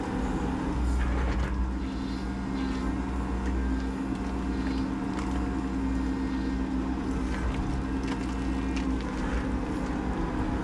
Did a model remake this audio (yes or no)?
no